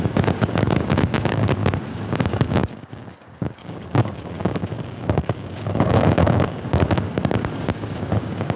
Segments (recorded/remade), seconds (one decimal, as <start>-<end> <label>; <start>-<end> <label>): 0.0-1.4 remade; 1.4-1.9 recorded; 1.9-8.6 remade